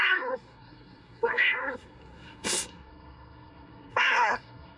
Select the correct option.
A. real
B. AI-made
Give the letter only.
B